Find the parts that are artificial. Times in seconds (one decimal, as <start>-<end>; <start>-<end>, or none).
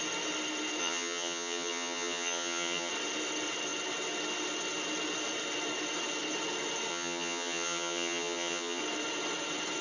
0.8-2.9; 6.9-8.8